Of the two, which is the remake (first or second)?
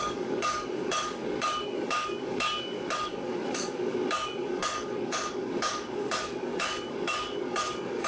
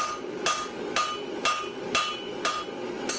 first